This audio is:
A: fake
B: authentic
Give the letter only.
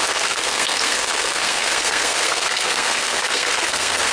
A